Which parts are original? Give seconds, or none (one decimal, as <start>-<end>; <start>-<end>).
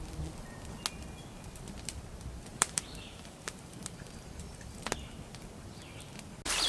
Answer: 0.0-2.5; 4.9-6.7